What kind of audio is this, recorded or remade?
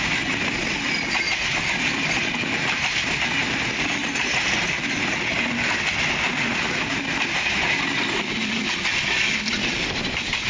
recorded